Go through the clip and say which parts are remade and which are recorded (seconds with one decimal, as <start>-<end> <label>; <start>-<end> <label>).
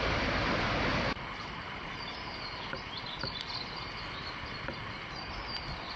0.0-0.9 recorded; 0.9-1.7 remade; 1.7-6.0 recorded